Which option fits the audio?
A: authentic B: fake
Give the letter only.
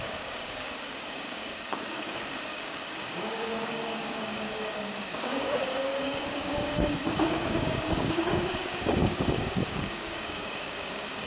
B